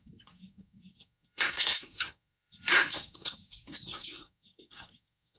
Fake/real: fake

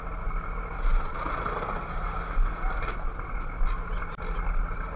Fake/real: real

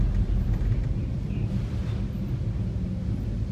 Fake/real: real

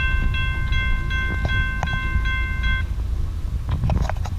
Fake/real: real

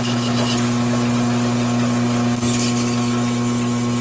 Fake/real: real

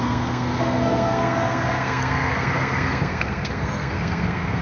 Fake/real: fake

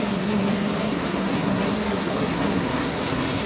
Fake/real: fake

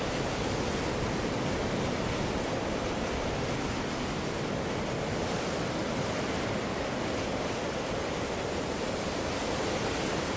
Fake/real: real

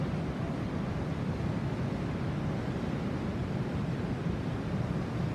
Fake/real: real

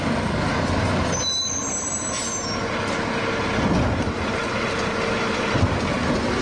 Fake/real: real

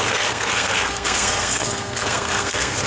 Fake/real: fake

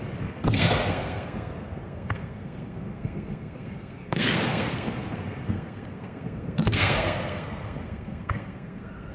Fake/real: fake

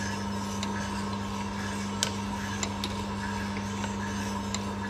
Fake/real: real